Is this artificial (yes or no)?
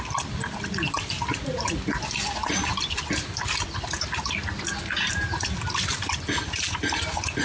no